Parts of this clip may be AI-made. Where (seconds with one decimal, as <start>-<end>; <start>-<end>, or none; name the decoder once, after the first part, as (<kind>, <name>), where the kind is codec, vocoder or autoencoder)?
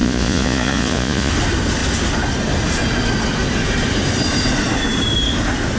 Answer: 0.0-1.3 (vocoder, Vocos)